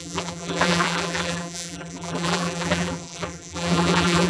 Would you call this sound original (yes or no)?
no